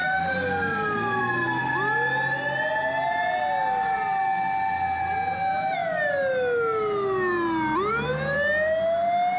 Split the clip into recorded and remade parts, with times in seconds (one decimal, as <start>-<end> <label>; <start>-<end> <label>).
0.0-9.4 recorded

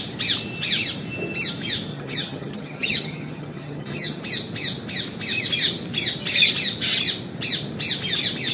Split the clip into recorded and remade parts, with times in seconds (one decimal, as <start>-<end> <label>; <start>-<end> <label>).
0.0-1.9 recorded; 1.9-4.2 remade; 4.2-8.5 recorded